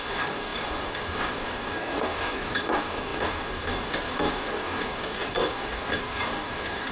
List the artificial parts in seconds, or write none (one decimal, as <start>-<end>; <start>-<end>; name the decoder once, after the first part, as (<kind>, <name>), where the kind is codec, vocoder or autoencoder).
0.0-6.9 (codec, DAC)